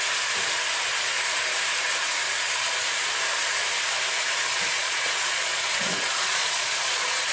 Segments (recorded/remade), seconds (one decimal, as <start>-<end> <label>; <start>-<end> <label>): 0.0-4.7 recorded; 4.7-7.3 remade